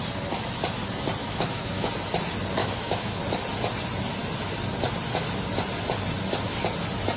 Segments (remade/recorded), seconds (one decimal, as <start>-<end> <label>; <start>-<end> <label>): 0.0-1.2 recorded; 1.2-1.9 remade; 1.9-2.6 recorded; 2.6-3.2 remade; 3.2-7.2 recorded